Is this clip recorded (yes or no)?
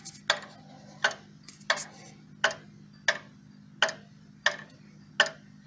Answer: yes